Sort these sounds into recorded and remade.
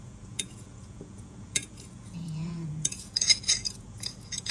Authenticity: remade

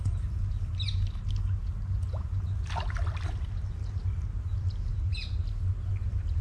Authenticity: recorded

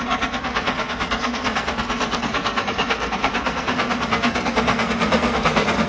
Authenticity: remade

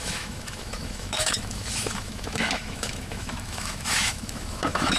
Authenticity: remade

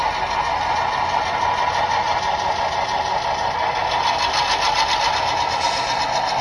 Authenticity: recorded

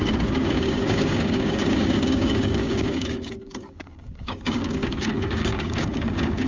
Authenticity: remade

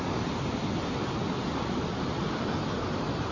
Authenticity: recorded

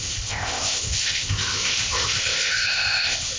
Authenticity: remade